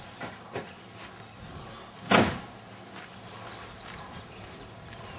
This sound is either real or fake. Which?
real